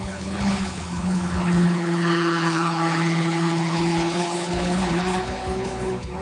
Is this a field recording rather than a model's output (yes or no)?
no